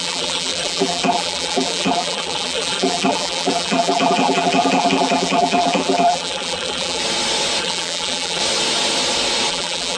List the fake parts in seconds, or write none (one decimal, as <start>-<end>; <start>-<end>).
0.0-7.0; 7.6-8.4; 9.5-10.0